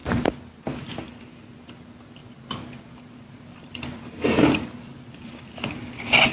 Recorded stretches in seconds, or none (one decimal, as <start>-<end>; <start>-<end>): 0.0-6.3